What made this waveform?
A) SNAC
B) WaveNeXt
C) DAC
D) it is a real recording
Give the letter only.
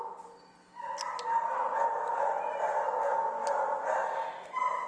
D